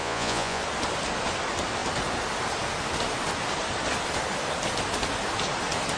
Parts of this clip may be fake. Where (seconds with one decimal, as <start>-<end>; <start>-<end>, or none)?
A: 0.0-0.6